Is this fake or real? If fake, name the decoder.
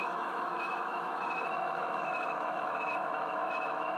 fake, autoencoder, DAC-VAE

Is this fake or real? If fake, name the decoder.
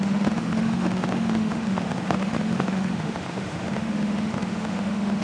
fake, autoencoder, DAC-VAE